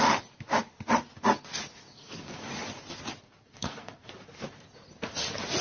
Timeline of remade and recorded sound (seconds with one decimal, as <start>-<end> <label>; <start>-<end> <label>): 0.0-1.9 recorded; 1.9-2.4 remade; 2.4-3.5 recorded; 3.5-4.1 remade; 4.1-5.6 recorded